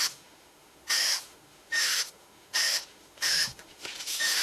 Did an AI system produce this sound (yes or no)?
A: yes